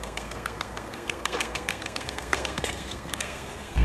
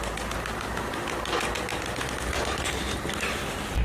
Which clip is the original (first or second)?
second